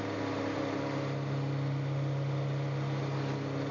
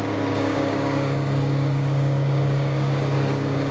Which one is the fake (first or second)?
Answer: second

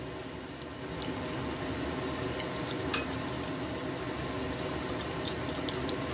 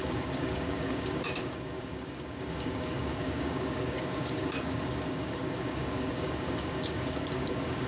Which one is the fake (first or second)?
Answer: second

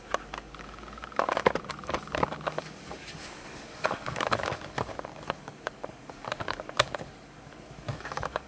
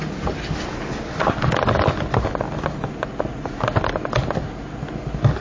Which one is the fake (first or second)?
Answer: first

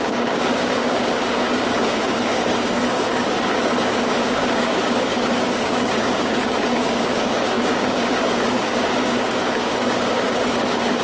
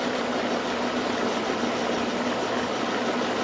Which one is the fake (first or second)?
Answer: first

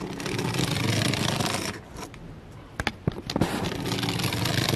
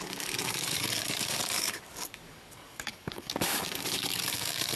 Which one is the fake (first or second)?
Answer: second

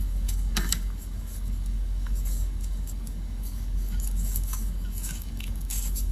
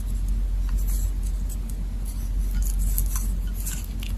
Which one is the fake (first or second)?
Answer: first